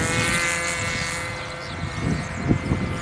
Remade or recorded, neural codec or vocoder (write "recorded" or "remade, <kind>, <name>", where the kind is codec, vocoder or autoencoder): recorded